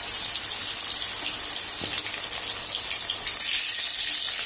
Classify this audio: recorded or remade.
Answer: recorded